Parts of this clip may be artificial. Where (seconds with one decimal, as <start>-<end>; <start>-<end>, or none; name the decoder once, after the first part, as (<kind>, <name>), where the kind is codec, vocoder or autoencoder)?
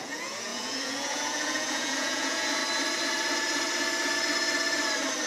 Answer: 0.0-2.6 (vocoder, Vocos)